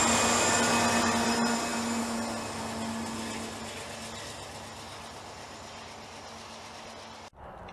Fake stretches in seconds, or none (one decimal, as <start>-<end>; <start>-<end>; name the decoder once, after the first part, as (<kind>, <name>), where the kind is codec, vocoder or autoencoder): none